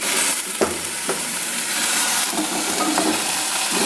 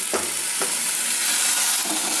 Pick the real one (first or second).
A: second